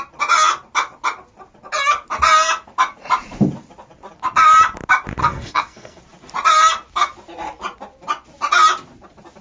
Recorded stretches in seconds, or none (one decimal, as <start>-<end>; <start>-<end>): 0.0-5.2; 6.0-9.4